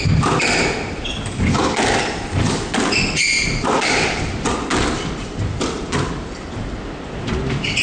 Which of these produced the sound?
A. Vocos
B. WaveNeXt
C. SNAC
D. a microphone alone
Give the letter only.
D